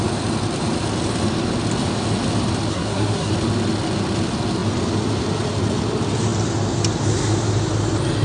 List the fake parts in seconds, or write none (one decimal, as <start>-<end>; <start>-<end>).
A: 2.7-3.3